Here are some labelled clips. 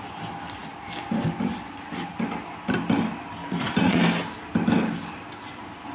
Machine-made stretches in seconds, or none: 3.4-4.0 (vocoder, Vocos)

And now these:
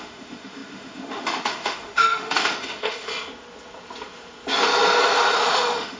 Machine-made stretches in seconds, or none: 0.0-3.1 (autoencoder, DAC-VAE); 5.4-6.0

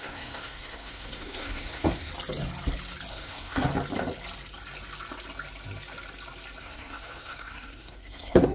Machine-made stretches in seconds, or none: 0.0-2.1 (codec, SNAC); 3.1-3.7; 6.6-8.5

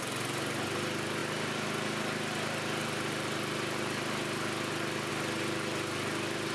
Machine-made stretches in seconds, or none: none

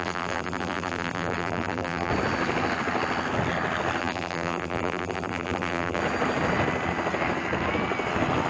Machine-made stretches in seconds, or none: 0.0-2.1 (vocoder, BigVGAN v2); 4.0-6.0

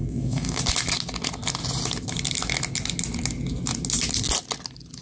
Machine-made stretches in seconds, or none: 0.0-0.6 (codec, SNAC)

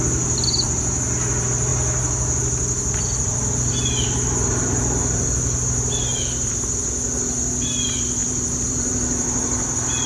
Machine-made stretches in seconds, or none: 8.2-10.1 (vocoder, BigVGAN v2)

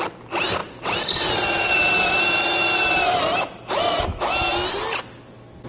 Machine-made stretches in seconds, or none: 0.6-4.0 (vocoder, BigVGAN v2)